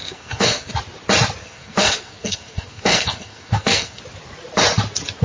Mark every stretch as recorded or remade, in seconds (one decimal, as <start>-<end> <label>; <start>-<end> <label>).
0.0-0.7 remade; 0.7-1.4 recorded; 1.4-4.0 remade; 4.0-5.2 recorded